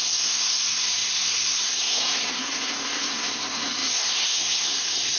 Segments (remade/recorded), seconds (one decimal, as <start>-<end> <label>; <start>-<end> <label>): 0.0-5.2 remade